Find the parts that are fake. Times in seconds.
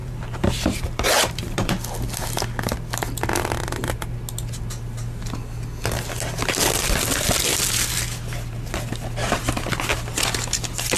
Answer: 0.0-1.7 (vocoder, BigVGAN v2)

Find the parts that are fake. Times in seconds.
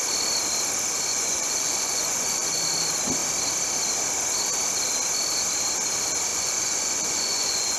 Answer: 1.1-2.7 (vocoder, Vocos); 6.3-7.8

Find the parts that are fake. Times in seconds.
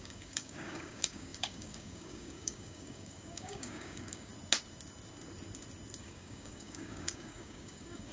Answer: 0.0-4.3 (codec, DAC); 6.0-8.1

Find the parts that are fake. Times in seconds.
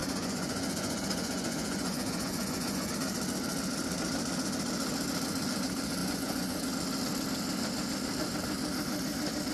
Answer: 0.0-2.9 (vocoder, Vocos); 6.0-6.7